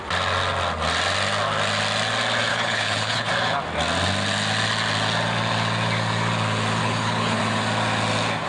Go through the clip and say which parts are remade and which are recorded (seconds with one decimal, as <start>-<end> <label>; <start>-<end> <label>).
0.0-2.5 recorded; 2.5-3.3 remade; 3.3-6.8 recorded; 6.8-7.4 remade; 7.4-8.5 recorded